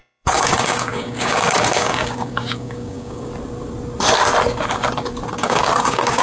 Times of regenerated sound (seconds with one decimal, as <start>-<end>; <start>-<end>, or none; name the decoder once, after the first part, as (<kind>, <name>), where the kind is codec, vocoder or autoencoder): 0.0-3.3 (codec, DAC); 5.3-6.2